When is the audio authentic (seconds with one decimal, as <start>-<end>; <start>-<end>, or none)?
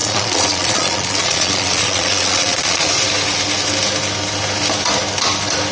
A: 2.9-5.7